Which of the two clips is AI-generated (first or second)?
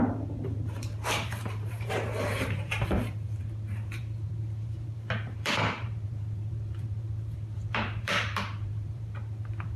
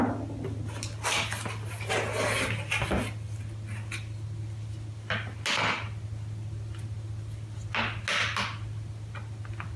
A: first